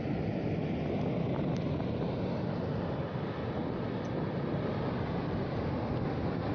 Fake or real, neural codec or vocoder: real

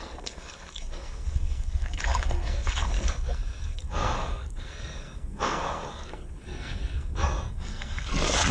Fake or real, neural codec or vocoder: fake, codec, SNAC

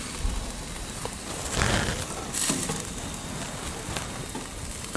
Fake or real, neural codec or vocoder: fake, vocoder, BigVGAN v2